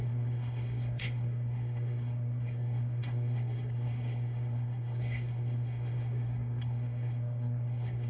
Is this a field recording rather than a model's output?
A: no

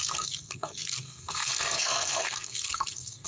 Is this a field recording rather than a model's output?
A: no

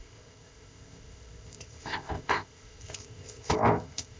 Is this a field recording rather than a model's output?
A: no